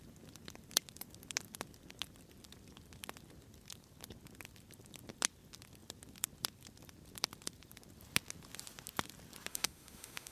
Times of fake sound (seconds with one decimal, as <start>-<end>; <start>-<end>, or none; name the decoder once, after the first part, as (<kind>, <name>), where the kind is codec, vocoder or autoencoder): 9.5-10.3 (autoencoder, DAC-VAE)